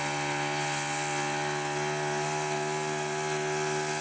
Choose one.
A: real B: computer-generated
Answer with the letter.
A